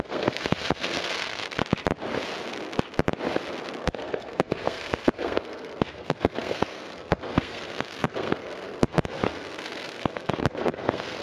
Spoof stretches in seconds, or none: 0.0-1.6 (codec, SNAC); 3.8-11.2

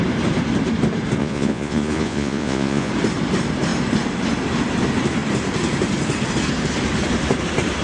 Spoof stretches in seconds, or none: 1.2-2.9 (vocoder, Vocos)